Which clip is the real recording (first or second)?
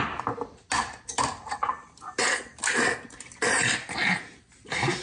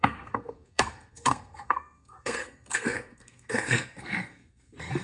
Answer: first